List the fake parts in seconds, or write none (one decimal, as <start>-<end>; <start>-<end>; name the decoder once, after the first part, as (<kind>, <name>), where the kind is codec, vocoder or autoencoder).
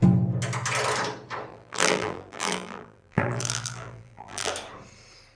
1.5-4.5 (vocoder, BigVGAN v2)